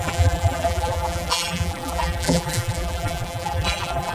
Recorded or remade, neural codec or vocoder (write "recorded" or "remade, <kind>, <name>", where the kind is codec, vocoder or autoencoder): remade, vocoder, BigVGAN v2